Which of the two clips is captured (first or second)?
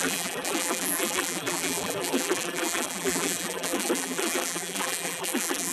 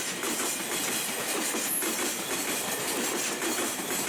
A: second